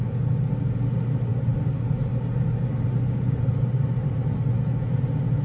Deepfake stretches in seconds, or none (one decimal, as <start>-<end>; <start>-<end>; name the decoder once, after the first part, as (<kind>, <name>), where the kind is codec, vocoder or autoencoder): 1.3-4.5 (vocoder, BigVGAN v2)